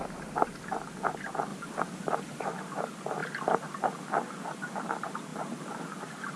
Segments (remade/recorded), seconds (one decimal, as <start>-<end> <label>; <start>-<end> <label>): 0.0-1.5 recorded; 1.5-2.5 remade; 2.5-6.4 recorded